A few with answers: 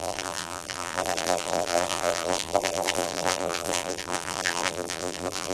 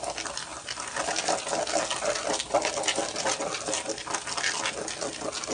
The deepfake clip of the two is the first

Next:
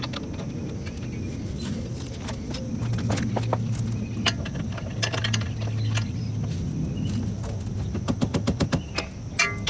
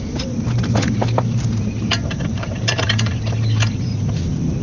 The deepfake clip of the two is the second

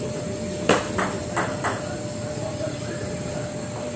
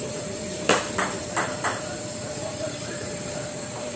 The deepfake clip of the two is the second